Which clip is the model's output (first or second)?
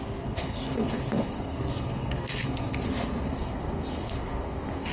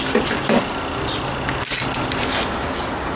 first